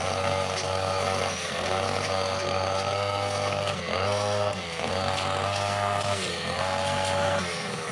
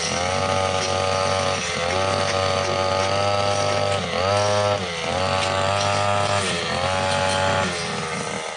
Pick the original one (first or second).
second